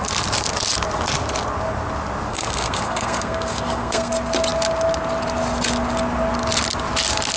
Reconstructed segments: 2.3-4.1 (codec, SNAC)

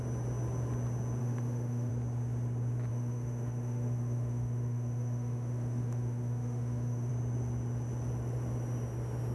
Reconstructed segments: 1.2-1.9 (autoencoder, DAC-VAE); 2.9-7.1

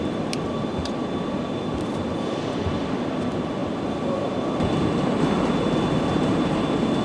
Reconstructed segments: none

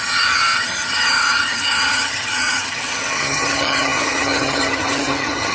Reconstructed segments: 0.0-5.5 (vocoder, HiFi-GAN)

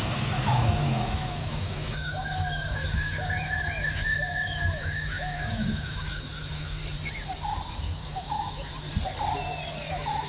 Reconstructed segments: 0.0-6.8 (autoencoder, DAC-VAE); 7.8-8.7; 9.9-10.3

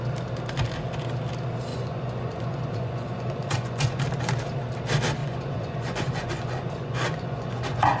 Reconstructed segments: 1.7-4.0 (vocoder, Vocos); 5.2-8.0

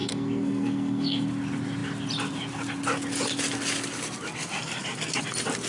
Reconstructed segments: 0.0-1.3 (codec, SNAC)